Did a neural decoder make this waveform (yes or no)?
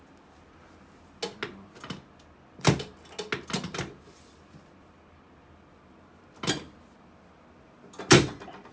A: no